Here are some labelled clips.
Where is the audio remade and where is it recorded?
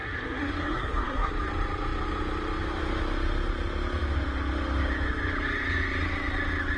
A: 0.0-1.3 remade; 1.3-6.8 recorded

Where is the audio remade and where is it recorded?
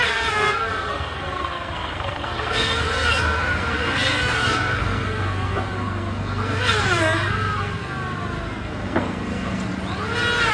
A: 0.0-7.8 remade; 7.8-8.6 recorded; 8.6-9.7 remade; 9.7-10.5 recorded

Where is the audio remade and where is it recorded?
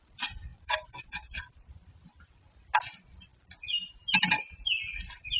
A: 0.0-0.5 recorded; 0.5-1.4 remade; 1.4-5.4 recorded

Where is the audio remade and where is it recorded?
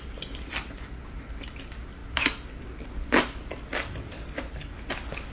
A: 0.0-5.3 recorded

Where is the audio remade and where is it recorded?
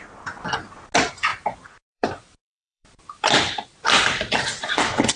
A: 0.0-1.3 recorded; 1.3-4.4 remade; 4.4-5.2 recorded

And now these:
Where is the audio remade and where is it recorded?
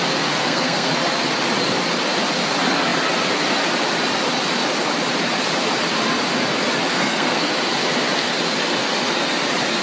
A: 0.0-0.4 recorded; 0.4-0.9 remade; 0.9-6.9 recorded; 6.9-7.5 remade; 7.5-9.8 recorded